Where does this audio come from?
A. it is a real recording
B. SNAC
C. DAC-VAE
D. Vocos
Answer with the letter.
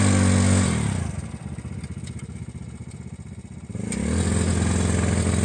A